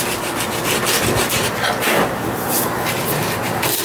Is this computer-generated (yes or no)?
no